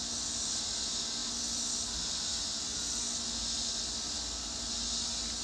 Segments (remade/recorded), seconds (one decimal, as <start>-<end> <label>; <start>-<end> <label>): 0.0-5.4 recorded